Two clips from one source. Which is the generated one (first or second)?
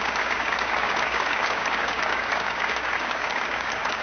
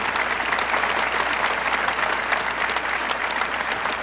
first